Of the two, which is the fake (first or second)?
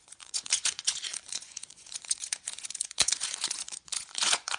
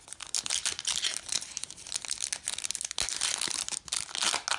first